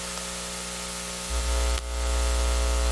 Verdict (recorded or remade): recorded